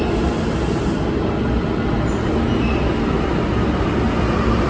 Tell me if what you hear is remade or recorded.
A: recorded